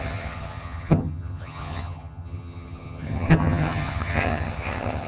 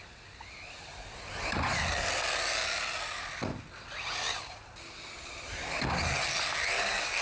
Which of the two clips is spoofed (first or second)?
first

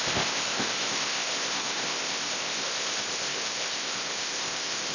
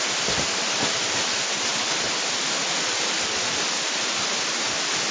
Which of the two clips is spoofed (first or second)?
first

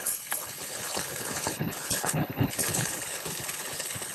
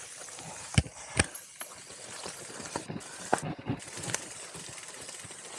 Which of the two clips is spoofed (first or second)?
first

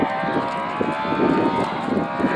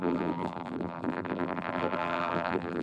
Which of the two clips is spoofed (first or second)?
second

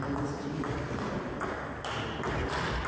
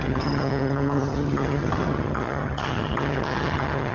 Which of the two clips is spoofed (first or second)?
second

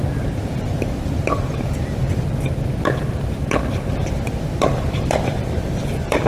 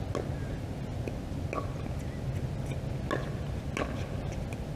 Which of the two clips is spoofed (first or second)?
first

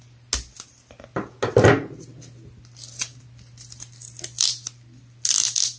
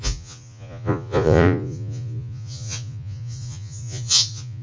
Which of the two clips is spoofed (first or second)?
second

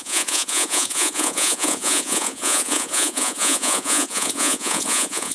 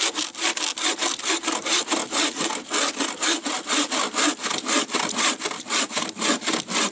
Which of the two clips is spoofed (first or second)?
first